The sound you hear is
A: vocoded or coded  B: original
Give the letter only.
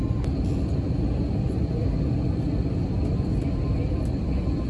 B